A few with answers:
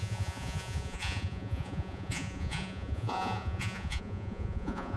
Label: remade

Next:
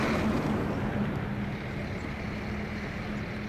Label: recorded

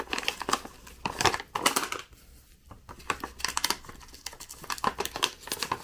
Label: recorded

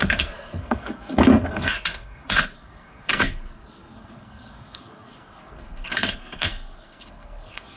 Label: remade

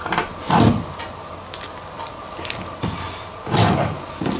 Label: recorded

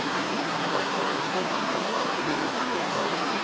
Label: remade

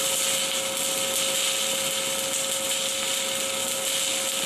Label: recorded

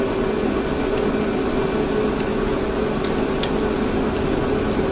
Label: recorded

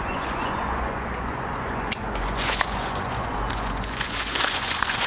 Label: remade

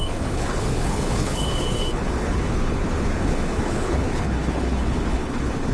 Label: remade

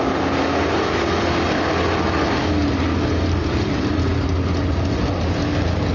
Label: recorded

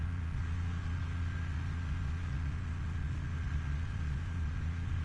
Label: remade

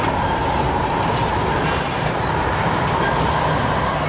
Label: recorded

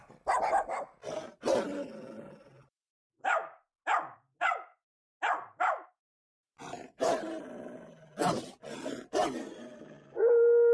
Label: recorded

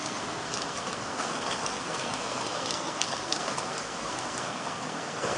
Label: remade